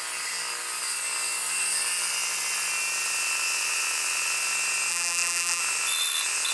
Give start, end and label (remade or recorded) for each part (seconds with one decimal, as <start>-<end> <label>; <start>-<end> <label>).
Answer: 0.0-4.9 recorded; 4.9-5.6 remade; 5.6-6.5 recorded